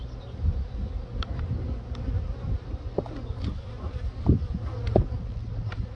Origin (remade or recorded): recorded